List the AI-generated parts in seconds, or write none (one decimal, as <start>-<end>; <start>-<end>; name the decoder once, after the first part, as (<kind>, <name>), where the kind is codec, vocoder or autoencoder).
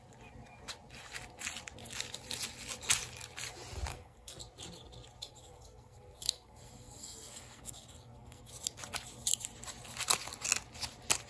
3.9-4.4 (codec, SNAC); 5.3-8.5